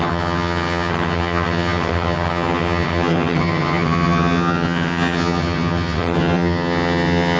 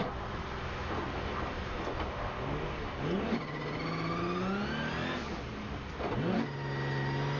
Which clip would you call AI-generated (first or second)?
first